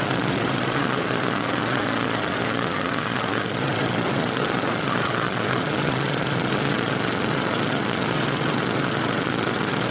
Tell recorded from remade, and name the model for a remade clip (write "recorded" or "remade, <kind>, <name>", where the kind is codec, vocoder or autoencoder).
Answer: remade, vocoder, Vocos